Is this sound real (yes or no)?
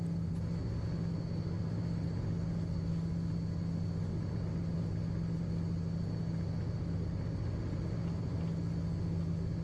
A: yes